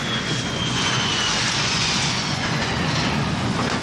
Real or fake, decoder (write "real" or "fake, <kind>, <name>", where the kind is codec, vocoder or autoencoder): fake, vocoder, Vocos